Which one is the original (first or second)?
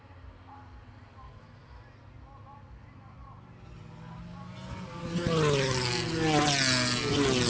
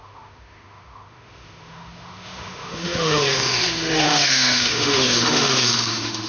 first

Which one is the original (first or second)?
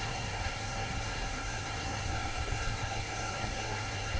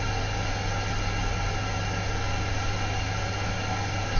second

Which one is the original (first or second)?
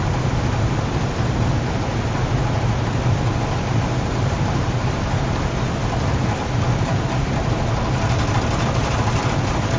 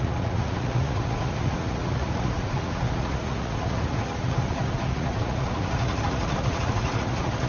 first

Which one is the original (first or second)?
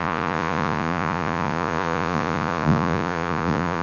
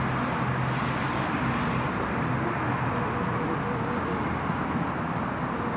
second